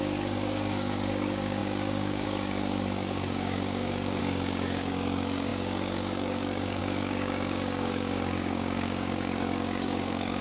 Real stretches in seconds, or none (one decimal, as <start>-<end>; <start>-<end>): none